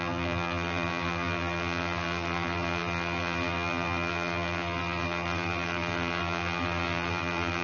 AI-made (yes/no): yes